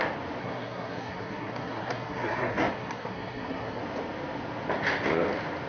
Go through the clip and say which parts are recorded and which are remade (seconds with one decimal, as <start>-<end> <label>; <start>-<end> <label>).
0.0-0.4 recorded; 0.4-3.8 remade; 3.8-5.7 recorded